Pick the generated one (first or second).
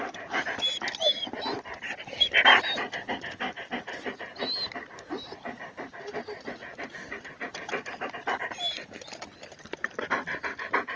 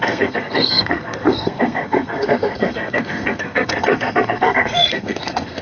second